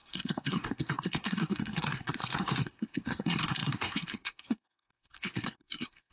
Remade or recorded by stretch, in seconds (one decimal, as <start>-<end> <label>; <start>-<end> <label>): 0.0-6.1 remade